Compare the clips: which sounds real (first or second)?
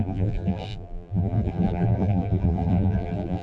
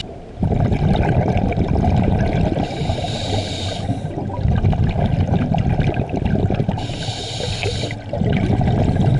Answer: second